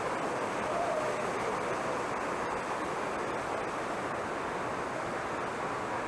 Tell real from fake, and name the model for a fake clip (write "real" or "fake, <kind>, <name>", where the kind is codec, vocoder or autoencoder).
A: real